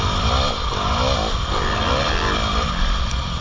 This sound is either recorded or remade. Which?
recorded